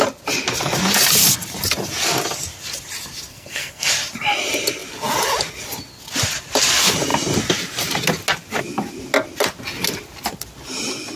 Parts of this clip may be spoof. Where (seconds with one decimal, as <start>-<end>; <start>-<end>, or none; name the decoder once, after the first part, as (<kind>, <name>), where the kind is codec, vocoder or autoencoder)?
3.3-3.9 (codec, SNAC)